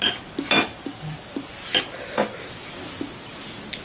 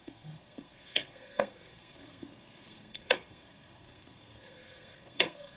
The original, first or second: first